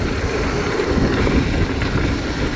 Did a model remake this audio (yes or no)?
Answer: no